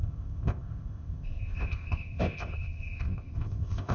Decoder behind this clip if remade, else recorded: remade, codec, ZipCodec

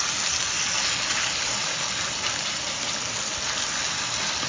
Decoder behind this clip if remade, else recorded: recorded